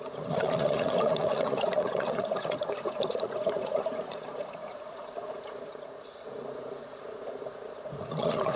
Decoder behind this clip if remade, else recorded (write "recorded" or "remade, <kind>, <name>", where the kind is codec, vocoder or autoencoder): remade, vocoder, Vocos